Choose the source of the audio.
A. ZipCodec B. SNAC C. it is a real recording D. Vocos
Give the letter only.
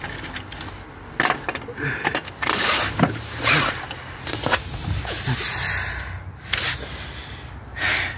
C